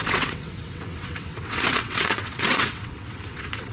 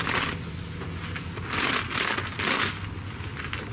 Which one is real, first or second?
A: second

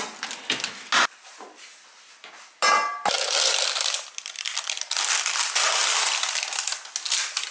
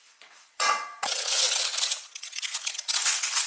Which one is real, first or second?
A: first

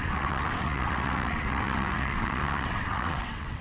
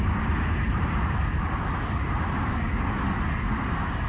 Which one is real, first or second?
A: second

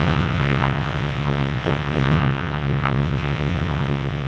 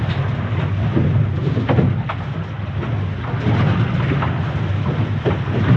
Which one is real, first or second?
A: second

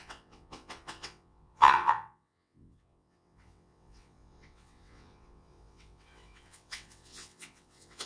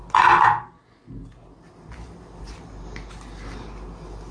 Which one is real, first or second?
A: second